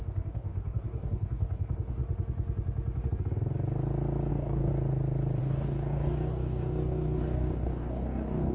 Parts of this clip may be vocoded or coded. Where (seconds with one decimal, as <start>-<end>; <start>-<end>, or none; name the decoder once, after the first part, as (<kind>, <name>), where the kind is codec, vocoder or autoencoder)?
0.0-2.0 (codec, DAC); 4.3-4.7; 5.4-8.5